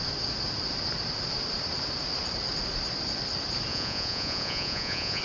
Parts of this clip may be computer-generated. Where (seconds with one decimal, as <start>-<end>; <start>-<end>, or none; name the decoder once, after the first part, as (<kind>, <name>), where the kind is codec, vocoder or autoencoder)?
3.7-5.2 (vocoder, Vocos)